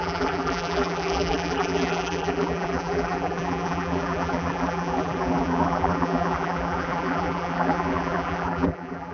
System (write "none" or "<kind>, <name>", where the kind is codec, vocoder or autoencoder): vocoder, BigVGAN v2